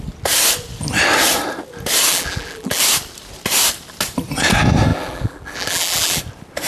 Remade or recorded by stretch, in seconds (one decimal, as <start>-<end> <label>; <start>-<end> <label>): 0.0-2.1 recorded; 2.1-2.8 remade; 2.8-4.9 recorded; 4.9-6.2 remade; 6.2-6.7 recorded